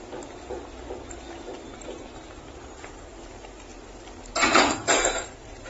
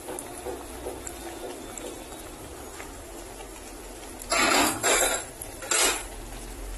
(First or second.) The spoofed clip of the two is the first